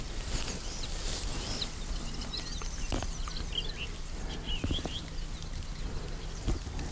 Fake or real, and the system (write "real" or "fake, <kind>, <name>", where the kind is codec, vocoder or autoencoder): real